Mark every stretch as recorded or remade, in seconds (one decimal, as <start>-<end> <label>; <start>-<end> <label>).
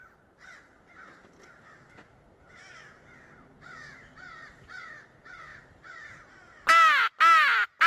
0.0-7.9 recorded